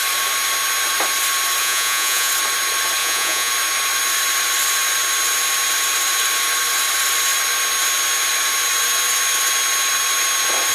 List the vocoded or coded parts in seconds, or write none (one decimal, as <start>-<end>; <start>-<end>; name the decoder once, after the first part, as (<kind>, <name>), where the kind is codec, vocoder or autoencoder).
1.6-2.3 (vocoder, Vocos); 3.0-3.5